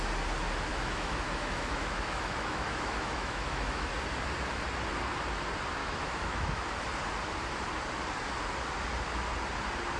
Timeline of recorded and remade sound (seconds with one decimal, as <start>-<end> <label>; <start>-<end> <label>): 0.0-0.7 recorded; 0.7-3.9 remade; 3.9-5.8 recorded; 5.8-6.6 remade; 6.6-10.0 recorded